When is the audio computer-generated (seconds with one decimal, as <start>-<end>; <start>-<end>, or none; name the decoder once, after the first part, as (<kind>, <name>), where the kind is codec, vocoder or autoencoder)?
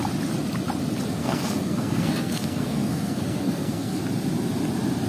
1.2-4.0 (codec, SNAC)